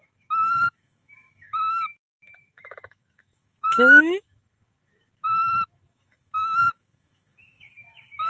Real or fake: fake